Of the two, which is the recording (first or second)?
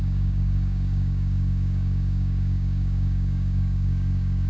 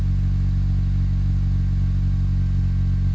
second